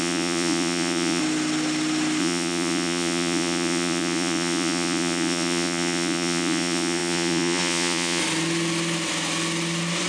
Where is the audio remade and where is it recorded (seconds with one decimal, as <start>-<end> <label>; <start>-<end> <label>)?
0.0-1.2 remade; 1.2-2.2 recorded; 2.2-8.2 remade; 8.2-10.1 recorded